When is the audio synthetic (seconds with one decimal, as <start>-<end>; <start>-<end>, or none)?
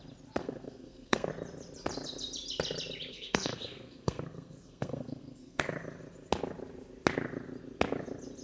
0.4-1.3; 3.1-5.6